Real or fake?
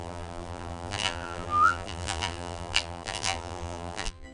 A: fake